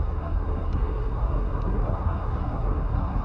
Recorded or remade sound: remade